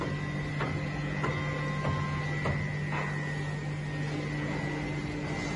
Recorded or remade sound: recorded